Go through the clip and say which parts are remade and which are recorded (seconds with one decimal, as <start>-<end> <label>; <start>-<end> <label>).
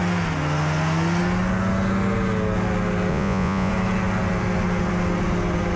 0.0-3.1 recorded; 3.1-3.7 remade; 3.7-5.8 recorded